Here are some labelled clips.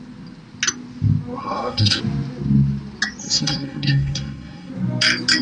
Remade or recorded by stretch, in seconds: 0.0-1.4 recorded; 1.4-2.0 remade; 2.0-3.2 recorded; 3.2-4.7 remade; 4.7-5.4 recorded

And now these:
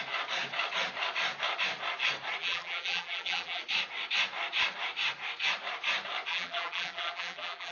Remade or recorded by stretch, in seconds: 0.0-2.4 recorded; 2.4-3.6 remade; 3.6-6.3 recorded; 6.3-7.7 remade

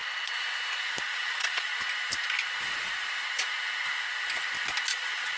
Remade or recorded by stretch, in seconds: 0.0-1.1 recorded; 1.1-1.7 remade; 1.7-4.9 recorded; 4.9-5.4 remade

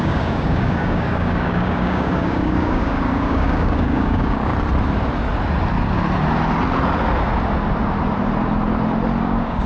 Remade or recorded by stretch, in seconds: 0.0-4.5 remade; 4.5-9.2 recorded; 9.2-9.7 remade